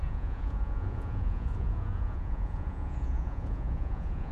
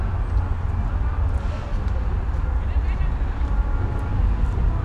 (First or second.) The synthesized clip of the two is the first